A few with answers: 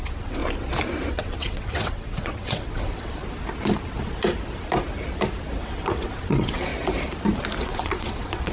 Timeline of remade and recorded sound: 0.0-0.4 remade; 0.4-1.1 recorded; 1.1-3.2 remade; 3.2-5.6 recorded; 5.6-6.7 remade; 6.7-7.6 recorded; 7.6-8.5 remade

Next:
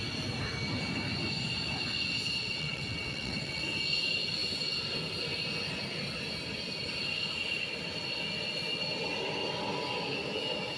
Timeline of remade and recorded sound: 0.0-2.4 recorded; 2.4-3.6 remade; 3.6-10.8 recorded

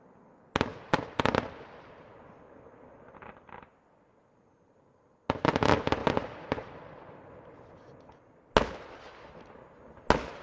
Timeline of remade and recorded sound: 0.0-10.4 recorded

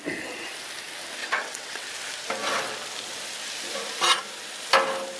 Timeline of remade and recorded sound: 0.0-1.2 recorded; 1.2-1.9 remade; 1.9-5.2 recorded